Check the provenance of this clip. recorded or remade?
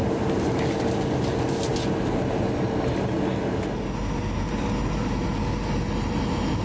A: recorded